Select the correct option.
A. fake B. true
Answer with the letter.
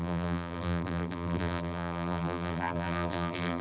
A